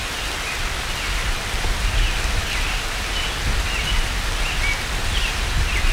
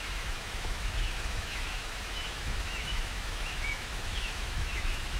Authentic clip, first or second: first